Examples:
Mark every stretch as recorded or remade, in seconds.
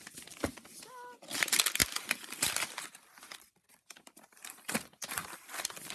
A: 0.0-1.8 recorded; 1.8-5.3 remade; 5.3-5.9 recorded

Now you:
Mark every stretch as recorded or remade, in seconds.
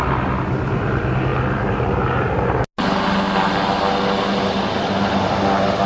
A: 0.0-5.9 recorded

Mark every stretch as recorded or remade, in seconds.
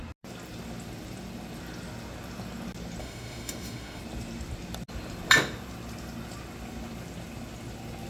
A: 0.0-3.0 recorded; 3.0-4.0 remade; 4.0-8.1 recorded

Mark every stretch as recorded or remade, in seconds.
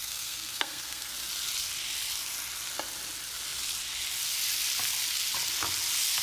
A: 0.0-1.1 remade; 1.1-6.2 recorded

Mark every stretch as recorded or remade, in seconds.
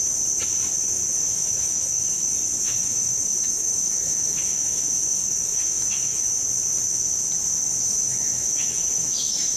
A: 0.0-1.3 recorded; 1.3-2.2 remade; 2.2-2.6 recorded; 2.6-6.3 remade; 6.3-7.9 recorded; 7.9-9.6 remade